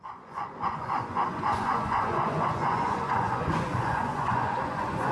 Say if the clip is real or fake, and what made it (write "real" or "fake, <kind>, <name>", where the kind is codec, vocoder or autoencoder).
fake, vocoder, Vocos